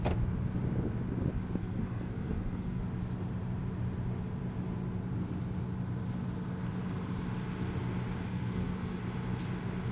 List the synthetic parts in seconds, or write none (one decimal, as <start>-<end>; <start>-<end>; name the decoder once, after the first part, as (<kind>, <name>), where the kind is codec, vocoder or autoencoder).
1.6-2.8 (codec, SNAC); 8.3-9.0